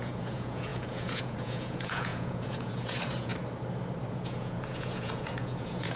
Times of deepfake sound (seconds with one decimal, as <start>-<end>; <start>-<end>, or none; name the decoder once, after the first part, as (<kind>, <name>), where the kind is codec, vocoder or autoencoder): 0.0-3.3 (vocoder, Vocos); 4.1-6.0